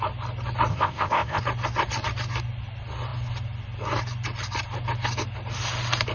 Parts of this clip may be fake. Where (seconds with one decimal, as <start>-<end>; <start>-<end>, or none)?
0.7-1.4

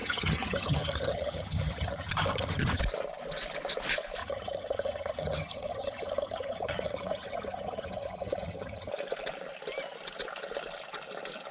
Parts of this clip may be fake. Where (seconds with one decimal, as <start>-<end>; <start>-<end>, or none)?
0.0-2.8; 4.2-8.9

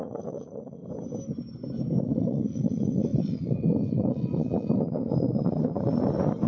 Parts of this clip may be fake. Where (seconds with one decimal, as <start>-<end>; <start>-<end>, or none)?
0.0-0.8; 2.0-6.5

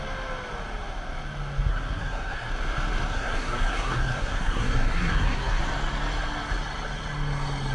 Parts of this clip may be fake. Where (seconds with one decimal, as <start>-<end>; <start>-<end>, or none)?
1.7-2.5; 3.1-5.6

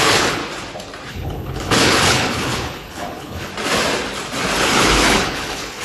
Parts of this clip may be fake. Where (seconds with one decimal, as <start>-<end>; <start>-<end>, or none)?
0.0-0.4; 1.1-3.5; 4.6-5.8

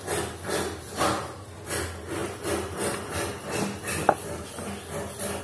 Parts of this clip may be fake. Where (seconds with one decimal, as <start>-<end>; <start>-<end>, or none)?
none

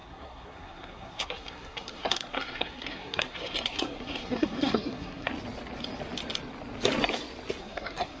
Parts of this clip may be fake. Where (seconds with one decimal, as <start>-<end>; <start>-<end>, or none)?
0.0-5.3; 7.6-8.2